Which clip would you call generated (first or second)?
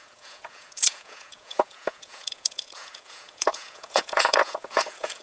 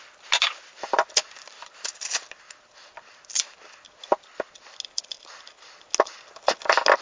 first